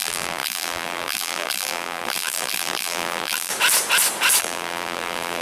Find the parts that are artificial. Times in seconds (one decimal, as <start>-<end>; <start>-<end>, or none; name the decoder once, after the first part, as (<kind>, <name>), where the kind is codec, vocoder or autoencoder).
0.0-3.5 (vocoder, BigVGAN v2); 4.4-5.4

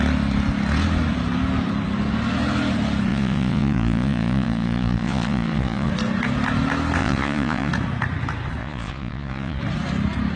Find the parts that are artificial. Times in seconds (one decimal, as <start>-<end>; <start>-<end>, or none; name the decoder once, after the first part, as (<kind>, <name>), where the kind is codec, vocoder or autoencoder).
3.1-5.9 (vocoder, Vocos); 7.0-7.7; 8.6-9.6

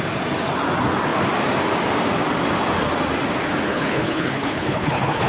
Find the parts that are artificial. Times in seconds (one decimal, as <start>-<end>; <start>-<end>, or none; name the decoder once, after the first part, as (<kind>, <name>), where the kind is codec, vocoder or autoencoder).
3.7-5.3 (codec, HILCodec)

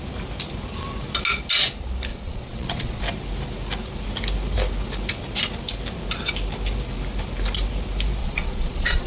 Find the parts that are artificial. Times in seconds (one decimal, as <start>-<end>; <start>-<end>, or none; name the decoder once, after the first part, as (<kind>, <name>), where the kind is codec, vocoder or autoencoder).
2.1-3.0 (vocoder, Vocos); 8.2-9.1